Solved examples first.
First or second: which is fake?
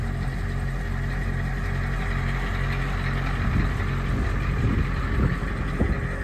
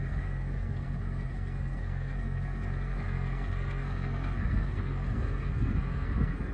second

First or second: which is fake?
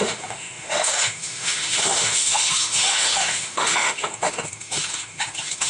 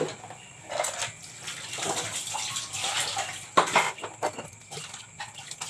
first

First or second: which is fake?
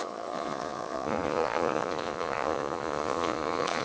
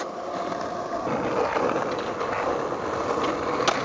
first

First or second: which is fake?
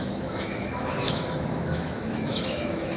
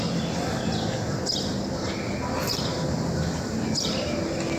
first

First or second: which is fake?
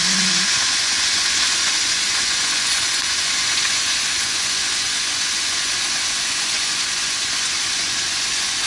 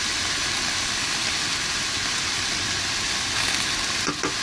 first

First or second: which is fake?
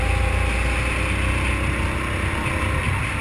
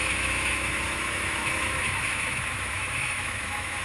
second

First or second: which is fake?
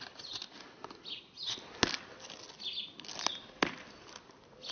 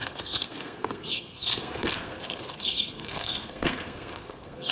second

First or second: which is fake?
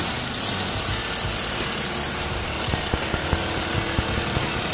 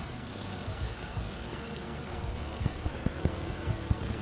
second